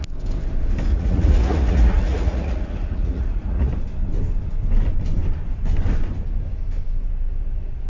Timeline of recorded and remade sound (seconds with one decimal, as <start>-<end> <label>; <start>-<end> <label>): 0.0-0.9 recorded; 0.9-3.7 remade; 3.7-7.9 recorded